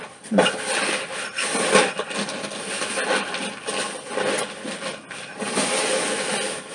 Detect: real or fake real